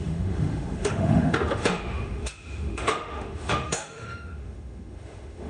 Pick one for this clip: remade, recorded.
remade